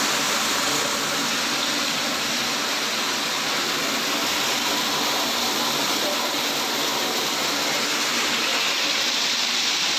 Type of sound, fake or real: real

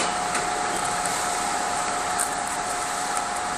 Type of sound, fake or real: fake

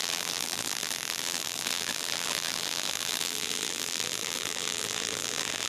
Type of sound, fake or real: fake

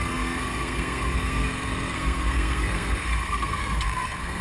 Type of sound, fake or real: fake